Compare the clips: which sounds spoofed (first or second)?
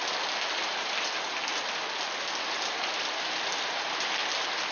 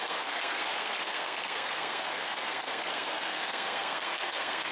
second